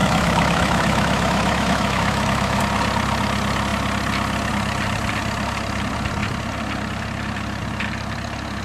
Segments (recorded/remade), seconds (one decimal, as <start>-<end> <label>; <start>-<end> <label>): 0.0-2.6 remade; 2.6-8.6 recorded